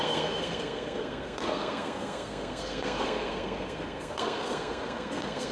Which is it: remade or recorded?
remade